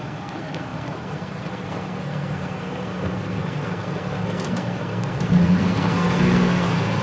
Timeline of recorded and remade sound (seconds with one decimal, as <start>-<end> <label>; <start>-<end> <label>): 0.0-7.0 remade